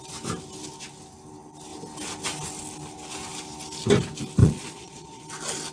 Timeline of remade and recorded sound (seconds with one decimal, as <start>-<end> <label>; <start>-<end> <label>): 0.0-4.4 recorded; 4.4-5.2 remade; 5.2-5.7 recorded

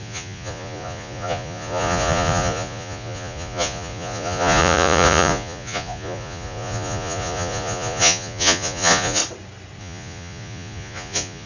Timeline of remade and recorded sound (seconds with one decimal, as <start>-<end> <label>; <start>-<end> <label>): 0.0-9.2 remade; 9.2-9.8 recorded; 9.8-11.5 remade

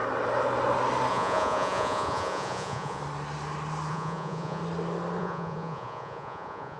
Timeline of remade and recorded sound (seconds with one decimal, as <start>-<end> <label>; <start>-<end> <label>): 0.0-1.1 recorded; 1.1-3.0 remade; 3.0-3.9 recorded; 3.9-4.6 remade; 4.6-5.2 recorded; 5.2-6.8 remade

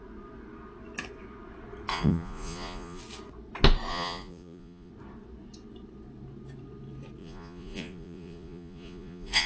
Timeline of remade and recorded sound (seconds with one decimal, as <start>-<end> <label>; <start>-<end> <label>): 0.0-1.9 recorded; 1.9-3.0 remade; 3.0-3.9 recorded; 3.9-4.9 remade; 4.9-7.2 recorded; 7.2-9.5 remade

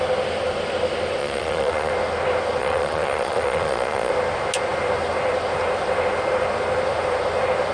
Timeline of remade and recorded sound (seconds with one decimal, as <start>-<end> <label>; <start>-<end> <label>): 0.0-1.2 recorded; 1.2-1.9 remade; 1.9-2.6 recorded; 2.6-4.1 remade; 4.1-7.7 recorded